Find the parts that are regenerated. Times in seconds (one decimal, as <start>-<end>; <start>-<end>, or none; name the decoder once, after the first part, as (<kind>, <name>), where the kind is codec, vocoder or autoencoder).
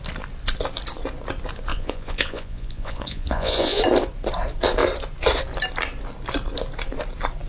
1.7-3.8 (vocoder, Vocos)